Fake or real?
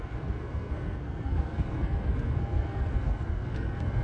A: fake